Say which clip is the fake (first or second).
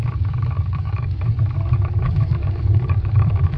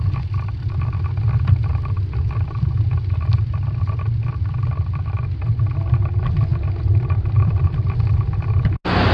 first